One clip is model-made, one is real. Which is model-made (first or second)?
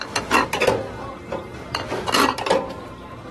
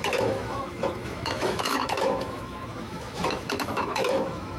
second